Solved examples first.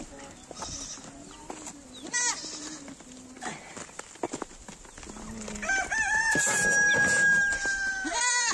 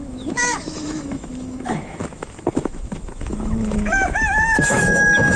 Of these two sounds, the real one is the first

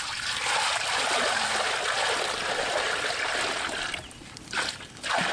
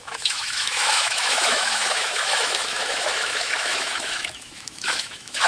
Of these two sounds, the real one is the first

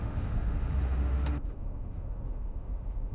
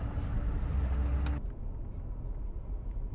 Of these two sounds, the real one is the second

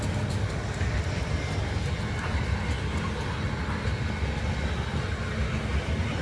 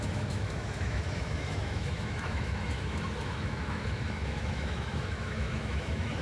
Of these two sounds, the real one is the first